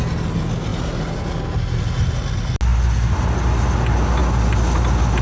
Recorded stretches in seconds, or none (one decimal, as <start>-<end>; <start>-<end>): 0.0-0.7; 1.2-5.2